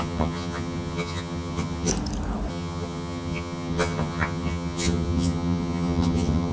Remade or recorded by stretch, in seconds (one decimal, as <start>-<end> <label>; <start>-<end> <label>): 0.0-1.9 remade; 1.9-2.5 recorded; 2.5-6.5 remade